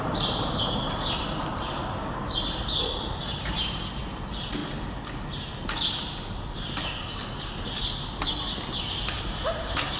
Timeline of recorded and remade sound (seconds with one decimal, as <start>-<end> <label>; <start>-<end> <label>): 0.0-4.6 remade; 4.6-8.8 recorded; 8.8-10.0 remade